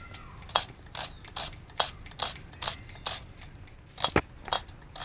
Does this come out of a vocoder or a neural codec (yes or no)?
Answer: no